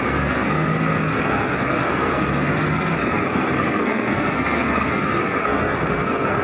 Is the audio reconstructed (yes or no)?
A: yes